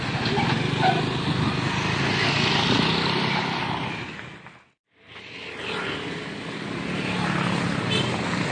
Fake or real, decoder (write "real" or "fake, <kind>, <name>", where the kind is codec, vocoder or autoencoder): real